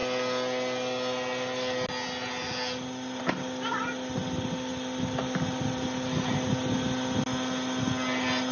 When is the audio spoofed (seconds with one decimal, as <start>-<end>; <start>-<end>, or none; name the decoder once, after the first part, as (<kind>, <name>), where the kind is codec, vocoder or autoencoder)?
none